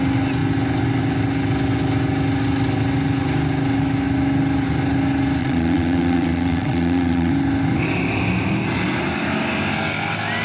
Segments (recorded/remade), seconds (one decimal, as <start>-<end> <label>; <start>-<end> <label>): 0.0-5.4 recorded; 5.4-7.3 remade; 7.3-10.4 recorded